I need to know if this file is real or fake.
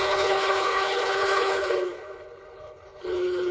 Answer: fake